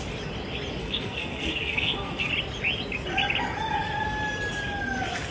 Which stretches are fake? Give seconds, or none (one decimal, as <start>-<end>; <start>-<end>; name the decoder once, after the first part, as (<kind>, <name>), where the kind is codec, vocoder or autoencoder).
0.8-2.3 (codec, SNAC)